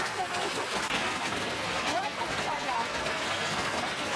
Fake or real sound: fake